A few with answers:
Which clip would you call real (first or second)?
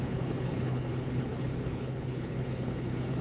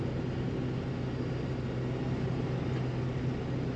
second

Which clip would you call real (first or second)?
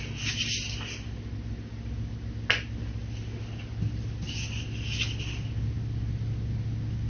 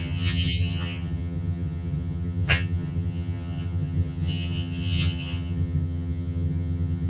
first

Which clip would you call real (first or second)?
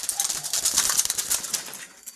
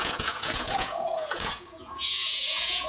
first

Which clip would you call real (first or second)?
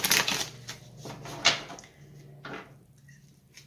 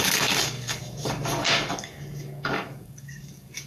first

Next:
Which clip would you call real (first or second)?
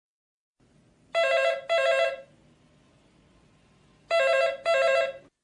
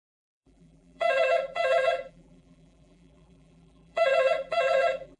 first